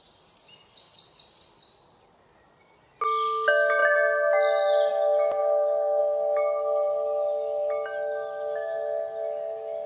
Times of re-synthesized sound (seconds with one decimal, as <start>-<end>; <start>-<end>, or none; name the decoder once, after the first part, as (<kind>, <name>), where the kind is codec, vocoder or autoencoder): 5.4-6.0 (autoencoder, DAC-VAE)